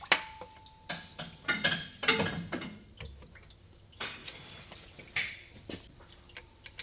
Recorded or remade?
recorded